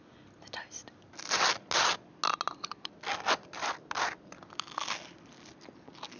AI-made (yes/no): no